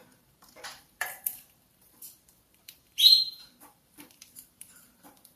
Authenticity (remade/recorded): remade